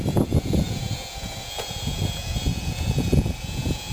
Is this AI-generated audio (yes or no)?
yes